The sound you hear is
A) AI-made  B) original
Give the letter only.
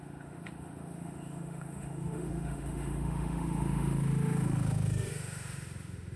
A